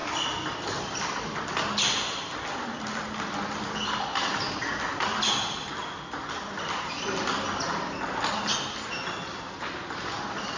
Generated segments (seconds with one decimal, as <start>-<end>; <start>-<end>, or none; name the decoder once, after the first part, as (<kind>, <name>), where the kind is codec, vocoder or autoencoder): none